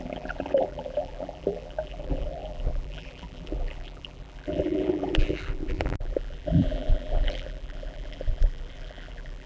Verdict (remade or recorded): remade